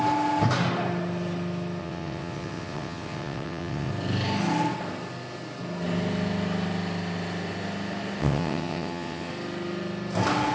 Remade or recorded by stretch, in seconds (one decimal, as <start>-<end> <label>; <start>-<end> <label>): 0.0-1.8 recorded; 1.8-3.9 remade; 3.9-8.2 recorded; 8.2-9.3 remade; 9.3-10.5 recorded